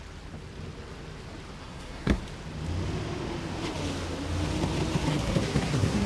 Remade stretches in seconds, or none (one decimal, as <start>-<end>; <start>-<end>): 1.6-2.2; 5.1-6.1